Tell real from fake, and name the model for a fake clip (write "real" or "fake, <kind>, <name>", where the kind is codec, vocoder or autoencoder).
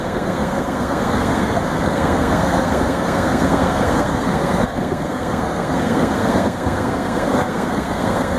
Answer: fake, codec, SNAC